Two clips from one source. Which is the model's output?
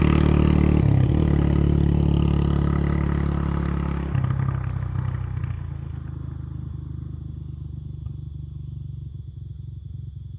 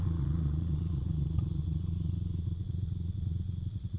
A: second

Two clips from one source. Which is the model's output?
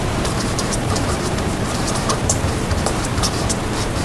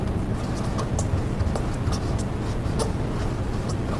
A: first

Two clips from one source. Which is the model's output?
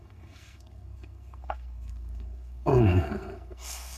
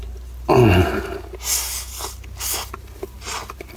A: first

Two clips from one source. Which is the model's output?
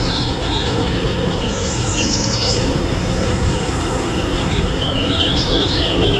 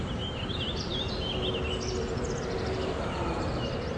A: first